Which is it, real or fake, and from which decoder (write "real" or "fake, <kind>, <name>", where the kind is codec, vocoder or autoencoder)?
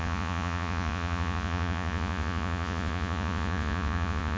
fake, vocoder, Vocos